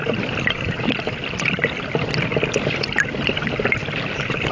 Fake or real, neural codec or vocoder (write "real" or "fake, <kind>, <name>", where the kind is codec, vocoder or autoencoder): real